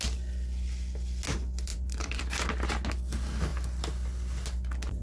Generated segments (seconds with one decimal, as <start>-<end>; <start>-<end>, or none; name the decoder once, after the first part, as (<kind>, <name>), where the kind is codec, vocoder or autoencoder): 1.7-2.2 (vocoder, BigVGAN v2)